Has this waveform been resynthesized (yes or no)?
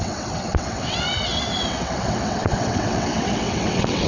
yes